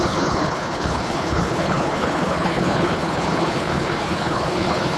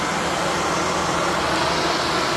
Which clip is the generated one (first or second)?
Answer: first